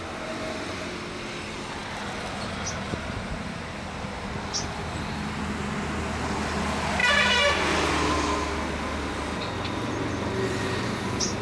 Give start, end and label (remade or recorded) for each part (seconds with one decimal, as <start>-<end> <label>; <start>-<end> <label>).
0.0-11.4 recorded